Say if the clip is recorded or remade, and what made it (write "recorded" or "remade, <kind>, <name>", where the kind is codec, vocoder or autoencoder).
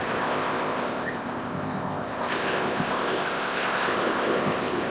remade, codec, ZipCodec